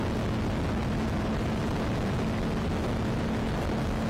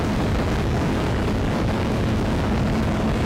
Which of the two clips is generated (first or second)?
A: second